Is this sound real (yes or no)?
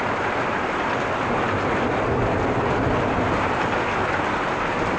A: yes